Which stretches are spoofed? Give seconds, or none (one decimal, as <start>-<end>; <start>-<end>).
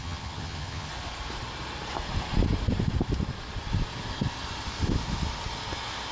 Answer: 0.0-0.9